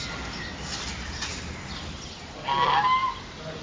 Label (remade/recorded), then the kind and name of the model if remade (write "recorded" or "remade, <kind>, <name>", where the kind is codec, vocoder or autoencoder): recorded